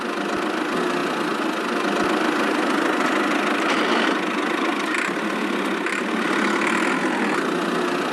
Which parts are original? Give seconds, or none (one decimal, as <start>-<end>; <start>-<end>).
0.0-8.1